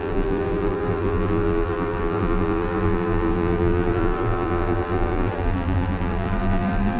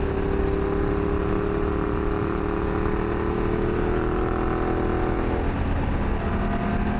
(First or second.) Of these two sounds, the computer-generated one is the first